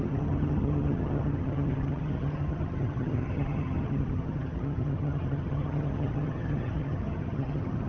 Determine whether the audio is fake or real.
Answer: fake